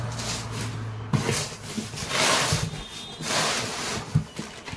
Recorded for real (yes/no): yes